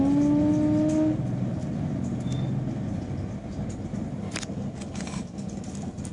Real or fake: real